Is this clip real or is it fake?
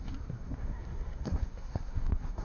fake